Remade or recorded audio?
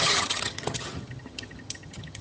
remade